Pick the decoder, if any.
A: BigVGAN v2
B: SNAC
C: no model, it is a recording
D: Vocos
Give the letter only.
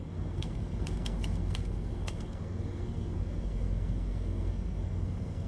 B